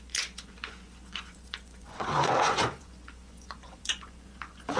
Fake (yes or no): yes